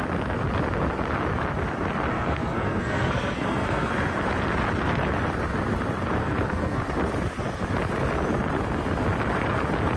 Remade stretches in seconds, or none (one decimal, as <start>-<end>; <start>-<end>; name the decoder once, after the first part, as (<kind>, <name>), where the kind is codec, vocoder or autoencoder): 2.1-3.9 (codec, SNAC); 6.2-6.8